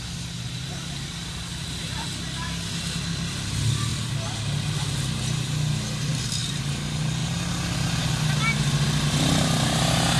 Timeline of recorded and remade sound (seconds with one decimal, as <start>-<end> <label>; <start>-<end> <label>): 0.0-10.2 recorded